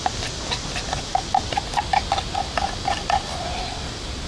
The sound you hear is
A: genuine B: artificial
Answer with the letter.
A